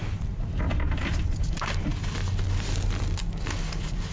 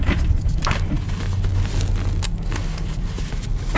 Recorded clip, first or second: second